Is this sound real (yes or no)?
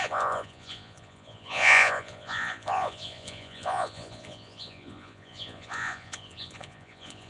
no